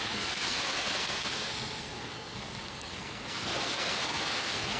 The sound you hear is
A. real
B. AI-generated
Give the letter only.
B